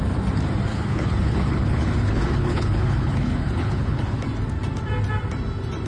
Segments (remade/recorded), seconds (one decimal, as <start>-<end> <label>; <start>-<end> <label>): 0.0-0.7 recorded; 0.7-4.2 remade; 4.2-5.9 recorded